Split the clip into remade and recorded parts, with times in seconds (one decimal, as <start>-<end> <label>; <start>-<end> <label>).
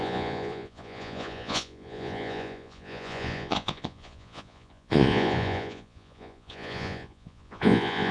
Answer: 0.0-8.1 remade